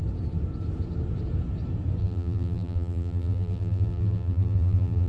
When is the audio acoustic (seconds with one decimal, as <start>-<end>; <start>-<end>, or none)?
0.0-2.0

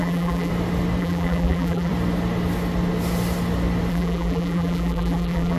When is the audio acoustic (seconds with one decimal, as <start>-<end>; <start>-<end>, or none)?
0.5-1.0; 1.9-3.9

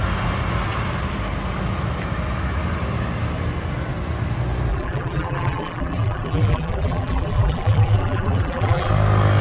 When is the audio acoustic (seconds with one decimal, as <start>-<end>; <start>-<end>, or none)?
0.0-4.7; 8.9-9.4

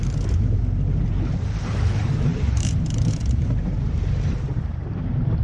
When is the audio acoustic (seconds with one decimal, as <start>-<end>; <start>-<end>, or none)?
0.6-1.4